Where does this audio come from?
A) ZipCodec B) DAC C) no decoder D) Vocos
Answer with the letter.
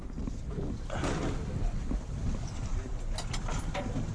C